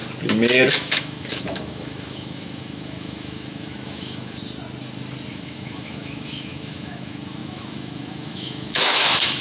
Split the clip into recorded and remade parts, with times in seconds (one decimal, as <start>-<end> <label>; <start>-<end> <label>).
0.0-0.7 recorded; 0.7-4.4 remade; 4.4-5.3 recorded; 5.3-9.4 remade